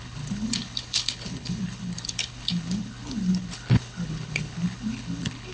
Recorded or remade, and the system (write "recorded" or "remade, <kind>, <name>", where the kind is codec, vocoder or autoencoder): remade, codec, HILCodec